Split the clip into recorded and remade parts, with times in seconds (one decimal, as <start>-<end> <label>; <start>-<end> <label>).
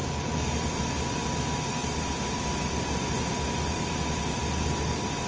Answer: 0.0-1.8 recorded; 1.8-4.2 remade; 4.2-5.3 recorded